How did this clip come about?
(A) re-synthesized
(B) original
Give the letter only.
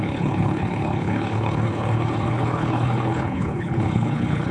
A